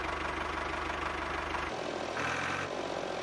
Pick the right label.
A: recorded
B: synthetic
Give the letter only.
A